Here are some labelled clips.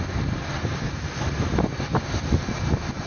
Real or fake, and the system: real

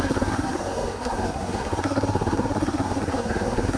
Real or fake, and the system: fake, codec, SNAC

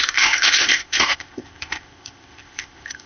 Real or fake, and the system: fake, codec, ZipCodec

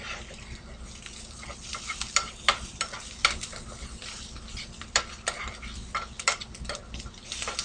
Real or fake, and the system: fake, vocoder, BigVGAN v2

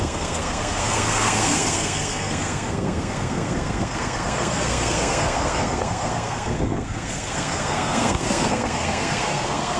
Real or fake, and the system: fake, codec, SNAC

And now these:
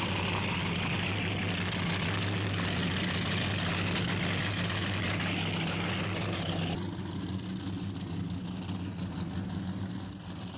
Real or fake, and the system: real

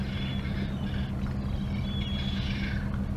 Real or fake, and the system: real